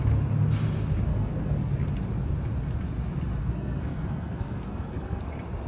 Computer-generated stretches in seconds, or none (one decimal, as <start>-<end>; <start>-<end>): 1.1-1.7; 3.4-5.2